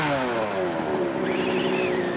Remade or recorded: recorded